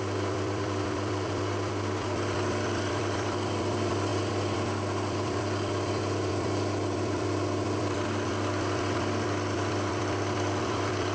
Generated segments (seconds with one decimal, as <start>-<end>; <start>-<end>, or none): 0.0-11.1